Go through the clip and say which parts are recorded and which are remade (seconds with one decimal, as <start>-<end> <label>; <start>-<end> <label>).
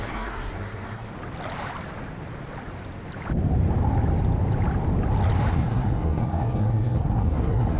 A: 0.0-1.1 remade; 1.1-5.5 recorded; 5.5-7.8 remade